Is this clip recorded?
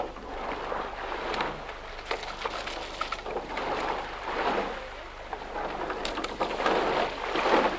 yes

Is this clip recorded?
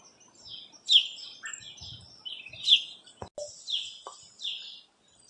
yes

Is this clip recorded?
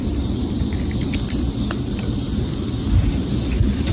yes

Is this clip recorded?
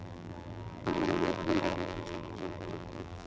no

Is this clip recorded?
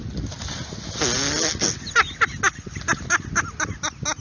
yes